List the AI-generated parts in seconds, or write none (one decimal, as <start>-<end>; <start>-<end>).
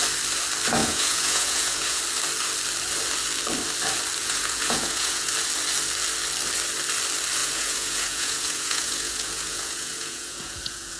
0.8-2.0; 4.2-5.3; 7.4-11.0